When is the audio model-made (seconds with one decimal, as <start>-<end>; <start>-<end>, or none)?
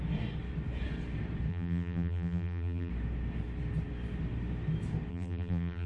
1.5-2.9; 5.1-5.9